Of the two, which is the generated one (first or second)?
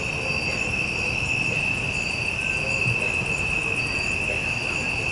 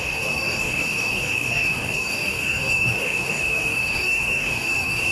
second